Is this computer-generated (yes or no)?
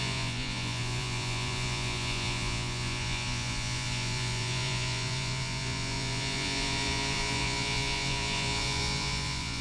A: yes